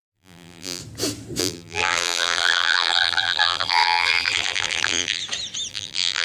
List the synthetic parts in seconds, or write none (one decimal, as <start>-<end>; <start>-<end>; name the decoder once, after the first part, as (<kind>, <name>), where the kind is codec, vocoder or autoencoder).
0.0-0.8 (vocoder, BigVGAN v2); 1.4-5.2; 5.7-6.2